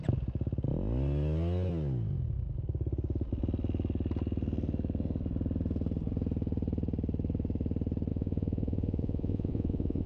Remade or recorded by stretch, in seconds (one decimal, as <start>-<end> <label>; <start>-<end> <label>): 0.0-8.1 recorded; 8.1-10.1 remade